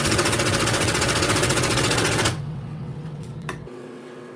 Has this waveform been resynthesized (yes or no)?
yes